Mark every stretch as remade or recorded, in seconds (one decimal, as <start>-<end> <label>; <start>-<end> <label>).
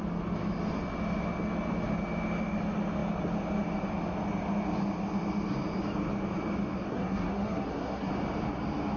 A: 0.0-6.9 recorded; 6.9-8.1 remade; 8.1-9.0 recorded